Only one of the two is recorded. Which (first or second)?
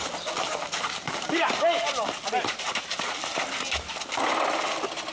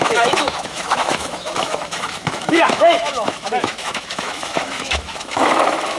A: first